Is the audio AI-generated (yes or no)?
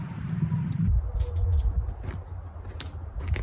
no